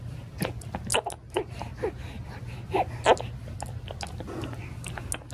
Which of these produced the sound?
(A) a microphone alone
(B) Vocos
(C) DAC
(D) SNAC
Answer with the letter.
A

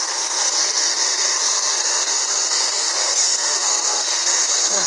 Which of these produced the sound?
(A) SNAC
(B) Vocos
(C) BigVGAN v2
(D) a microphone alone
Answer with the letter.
A